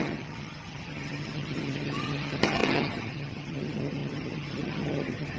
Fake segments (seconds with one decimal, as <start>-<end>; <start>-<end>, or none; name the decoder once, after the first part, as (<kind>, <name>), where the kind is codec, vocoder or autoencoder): 0.0-5.4 (vocoder, HiFi-GAN)